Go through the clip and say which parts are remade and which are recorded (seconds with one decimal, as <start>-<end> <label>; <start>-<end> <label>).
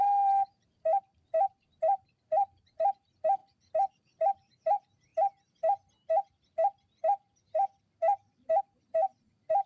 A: 0.0-3.4 remade; 3.4-3.9 recorded; 3.9-5.1 remade; 5.1-8.6 recorded; 8.6-9.7 remade